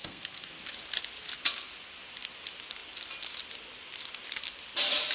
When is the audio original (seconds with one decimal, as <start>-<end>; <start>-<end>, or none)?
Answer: 0.5-5.1